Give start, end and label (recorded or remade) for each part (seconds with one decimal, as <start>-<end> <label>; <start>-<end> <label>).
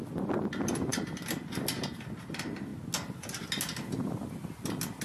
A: 0.0-5.0 recorded